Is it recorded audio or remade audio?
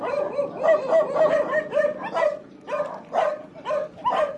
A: recorded